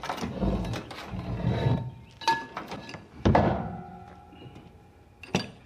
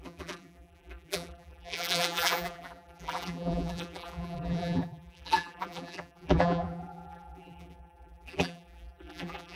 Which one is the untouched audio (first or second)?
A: first